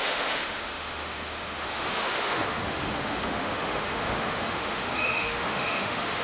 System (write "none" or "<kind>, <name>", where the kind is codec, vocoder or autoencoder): autoencoder, DAC-VAE